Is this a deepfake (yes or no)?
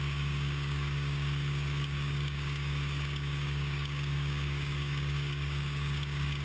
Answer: yes